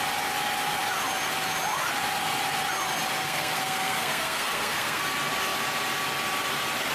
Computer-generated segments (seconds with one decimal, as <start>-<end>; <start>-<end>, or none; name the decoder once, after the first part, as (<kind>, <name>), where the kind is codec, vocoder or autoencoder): 3.2-5.0 (codec, SNAC)